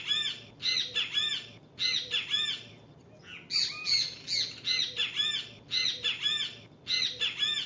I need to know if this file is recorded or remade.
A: recorded